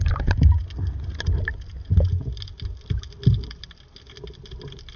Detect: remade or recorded recorded